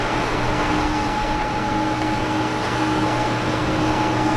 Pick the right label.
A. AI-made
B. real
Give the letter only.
A